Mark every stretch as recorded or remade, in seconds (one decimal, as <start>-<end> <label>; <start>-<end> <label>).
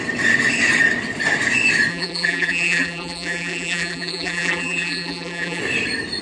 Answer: 0.0-1.9 recorded; 1.9-5.6 remade; 5.6-6.2 recorded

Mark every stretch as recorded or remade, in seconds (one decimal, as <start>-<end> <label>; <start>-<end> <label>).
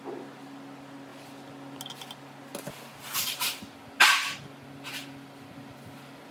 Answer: 0.0-6.3 recorded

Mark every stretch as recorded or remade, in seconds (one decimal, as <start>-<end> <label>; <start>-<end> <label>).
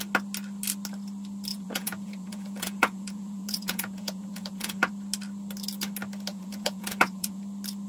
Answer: 0.0-1.5 recorded; 1.5-4.9 remade; 4.9-6.3 recorded; 6.3-7.4 remade; 7.4-7.9 recorded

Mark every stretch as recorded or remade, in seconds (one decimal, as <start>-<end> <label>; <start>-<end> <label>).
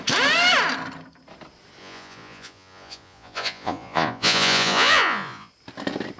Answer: 0.0-1.8 recorded; 1.8-5.5 remade; 5.5-6.2 recorded